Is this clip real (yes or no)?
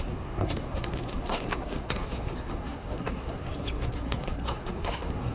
no